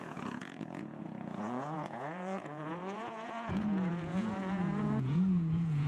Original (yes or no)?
no